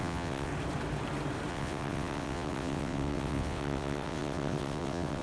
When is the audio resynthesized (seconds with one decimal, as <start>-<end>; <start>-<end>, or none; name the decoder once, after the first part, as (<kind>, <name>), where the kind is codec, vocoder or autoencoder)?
0.0-0.5 (vocoder, WaveNeXt); 1.5-5.2